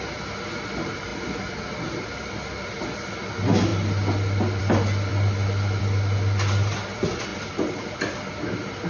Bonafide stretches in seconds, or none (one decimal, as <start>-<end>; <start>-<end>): 0.0-8.9